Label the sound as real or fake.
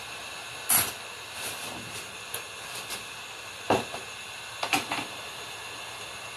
real